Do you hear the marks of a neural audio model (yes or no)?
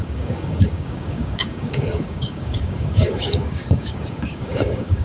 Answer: yes